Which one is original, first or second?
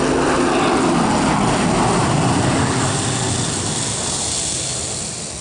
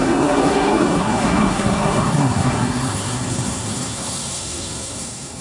first